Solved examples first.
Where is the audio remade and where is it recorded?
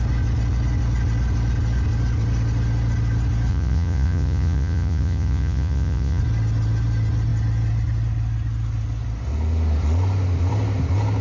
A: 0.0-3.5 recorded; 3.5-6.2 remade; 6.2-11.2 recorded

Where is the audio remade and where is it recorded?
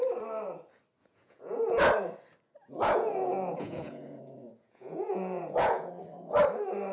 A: 0.0-1.0 recorded; 1.0-1.8 remade; 1.8-2.6 recorded; 2.6-5.9 remade; 5.9-6.9 recorded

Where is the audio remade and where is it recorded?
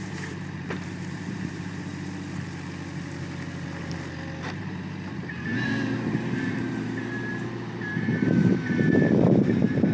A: 0.0-1.9 remade; 1.9-4.6 recorded; 4.6-9.9 remade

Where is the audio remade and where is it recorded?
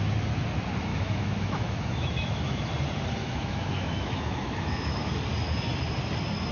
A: 0.0-0.9 recorded; 0.9-2.7 remade; 2.7-3.2 recorded; 3.2-5.1 remade; 5.1-6.5 recorded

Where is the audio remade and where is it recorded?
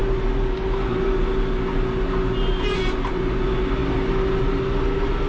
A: 0.0-5.3 recorded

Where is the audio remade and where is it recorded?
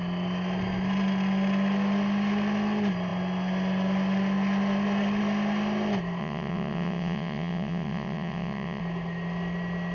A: 0.0-6.2 recorded; 6.2-8.8 remade; 8.8-9.9 recorded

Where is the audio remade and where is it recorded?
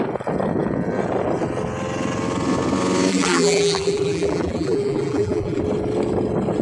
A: 0.0-3.1 recorded; 3.1-5.6 remade; 5.6-6.6 recorded